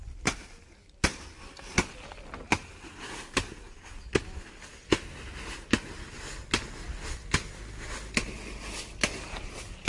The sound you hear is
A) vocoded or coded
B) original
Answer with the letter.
B